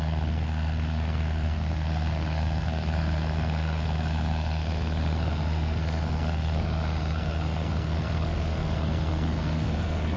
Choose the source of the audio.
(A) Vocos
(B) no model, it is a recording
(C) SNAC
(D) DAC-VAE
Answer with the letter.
C